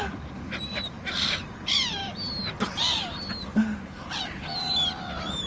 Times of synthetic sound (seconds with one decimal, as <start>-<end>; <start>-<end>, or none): 0.0-3.5; 4.3-5.5